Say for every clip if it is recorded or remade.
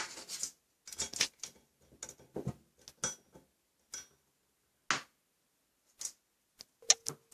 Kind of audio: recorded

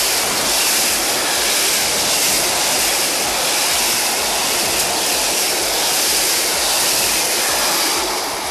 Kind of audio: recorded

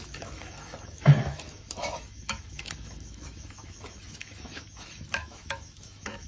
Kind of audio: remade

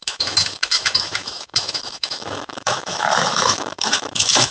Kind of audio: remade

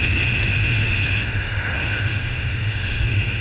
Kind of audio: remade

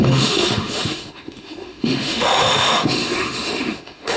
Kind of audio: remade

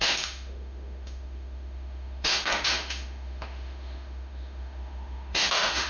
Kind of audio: remade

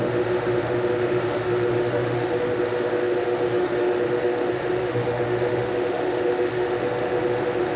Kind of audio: remade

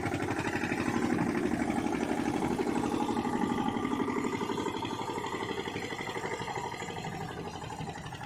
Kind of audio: recorded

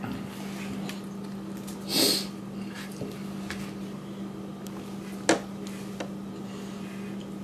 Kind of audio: recorded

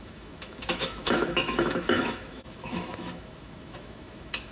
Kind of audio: remade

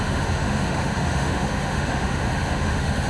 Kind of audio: remade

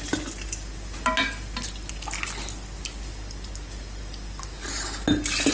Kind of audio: recorded